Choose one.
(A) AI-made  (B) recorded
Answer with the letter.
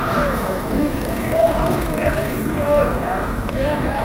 A